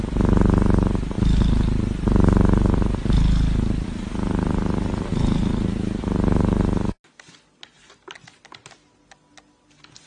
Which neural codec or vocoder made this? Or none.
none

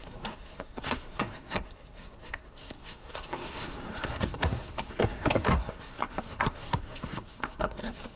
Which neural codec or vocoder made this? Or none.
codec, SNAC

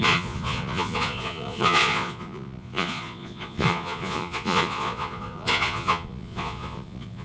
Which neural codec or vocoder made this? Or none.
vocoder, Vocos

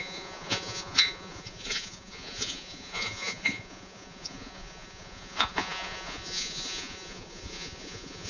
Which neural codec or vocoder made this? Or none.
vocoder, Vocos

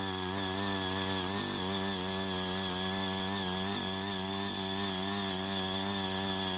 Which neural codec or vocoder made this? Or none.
none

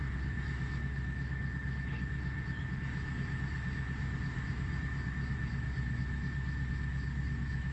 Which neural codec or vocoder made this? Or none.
autoencoder, DAC-VAE